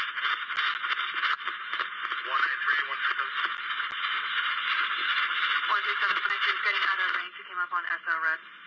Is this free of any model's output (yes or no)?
yes